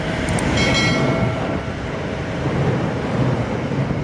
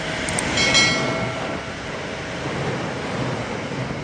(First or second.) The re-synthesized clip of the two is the first